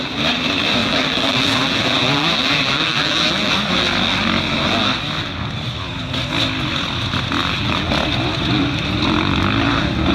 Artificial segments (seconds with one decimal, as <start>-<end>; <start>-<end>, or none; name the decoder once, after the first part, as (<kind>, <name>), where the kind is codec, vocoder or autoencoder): 0.8-3.5 (vocoder, BigVGAN v2); 7.4-7.9